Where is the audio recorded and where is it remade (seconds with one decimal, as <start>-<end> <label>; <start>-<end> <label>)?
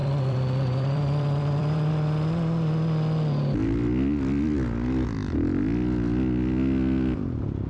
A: 0.0-1.9 remade; 1.9-7.7 recorded